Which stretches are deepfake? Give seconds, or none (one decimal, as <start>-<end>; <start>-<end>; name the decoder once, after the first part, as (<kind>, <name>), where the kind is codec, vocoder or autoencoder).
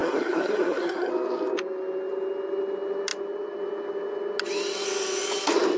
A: 0.0-1.1 (codec, SNAC)